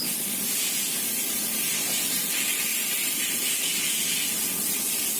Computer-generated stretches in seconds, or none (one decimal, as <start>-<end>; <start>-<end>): 2.7-4.2